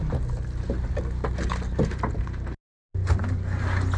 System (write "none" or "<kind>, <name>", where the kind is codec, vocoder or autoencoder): none